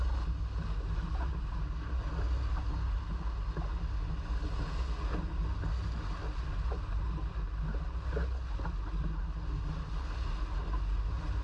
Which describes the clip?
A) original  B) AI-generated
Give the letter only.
A